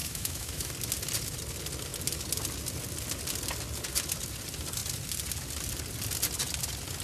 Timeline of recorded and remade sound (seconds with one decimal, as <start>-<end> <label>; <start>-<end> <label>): 0.0-0.7 remade; 0.7-7.0 recorded